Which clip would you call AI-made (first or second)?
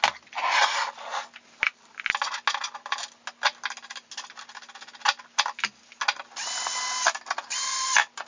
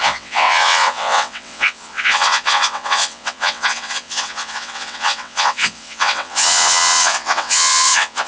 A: second